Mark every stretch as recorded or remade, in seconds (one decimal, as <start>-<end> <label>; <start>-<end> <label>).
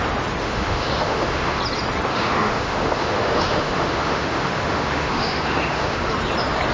0.0-0.4 recorded; 0.4-1.6 remade; 1.6-2.1 recorded; 2.1-6.1 remade; 6.1-6.7 recorded